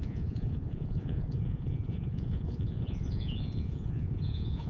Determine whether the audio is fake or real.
fake